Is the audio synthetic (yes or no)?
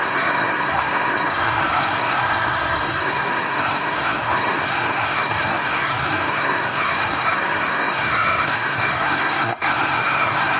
yes